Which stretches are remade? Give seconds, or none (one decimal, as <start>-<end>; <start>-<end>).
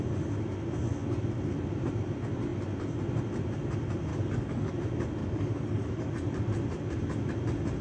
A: 4.1-4.7; 5.2-6.1